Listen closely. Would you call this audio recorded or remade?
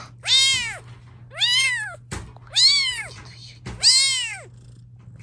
recorded